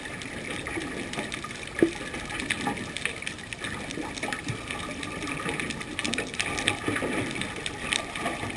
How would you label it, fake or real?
real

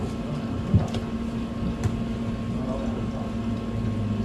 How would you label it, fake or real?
real